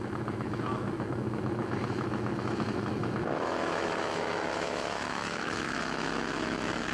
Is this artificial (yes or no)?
yes